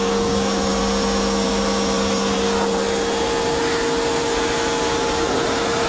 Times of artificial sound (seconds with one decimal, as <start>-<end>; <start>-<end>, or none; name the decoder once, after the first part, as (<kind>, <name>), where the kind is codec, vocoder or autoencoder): none